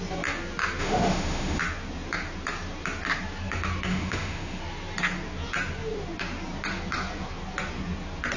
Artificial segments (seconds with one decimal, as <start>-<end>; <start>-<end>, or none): 0.8-1.6; 3.9-4.6